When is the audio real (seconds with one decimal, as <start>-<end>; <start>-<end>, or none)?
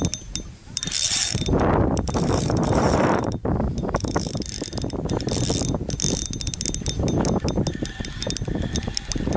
0.0-0.6; 4.3-9.4